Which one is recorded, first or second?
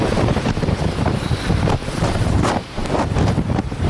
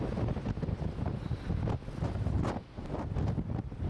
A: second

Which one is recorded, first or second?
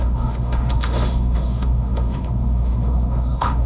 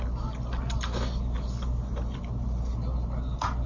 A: second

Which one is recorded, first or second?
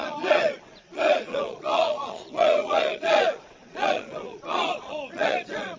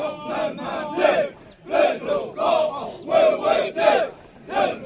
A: second